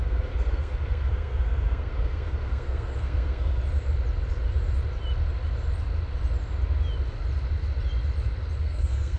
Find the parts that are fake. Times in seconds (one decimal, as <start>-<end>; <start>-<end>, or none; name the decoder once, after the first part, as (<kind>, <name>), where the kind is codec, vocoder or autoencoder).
0.0-3.6 (codec, SNAC); 8.6-9.2